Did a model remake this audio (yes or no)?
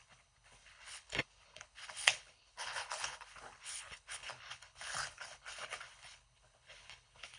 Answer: yes